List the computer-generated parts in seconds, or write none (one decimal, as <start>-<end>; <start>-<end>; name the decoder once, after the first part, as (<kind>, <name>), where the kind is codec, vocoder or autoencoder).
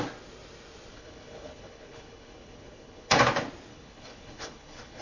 0.9-3.2 (codec, HILCodec); 3.7-5.0